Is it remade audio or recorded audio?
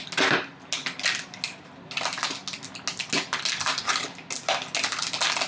recorded